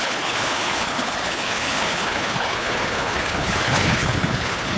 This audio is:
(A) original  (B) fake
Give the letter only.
B